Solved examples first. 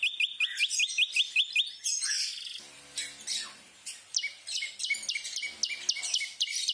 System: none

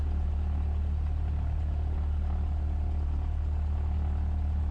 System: none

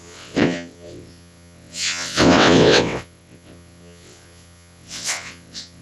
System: vocoder, WaveNeXt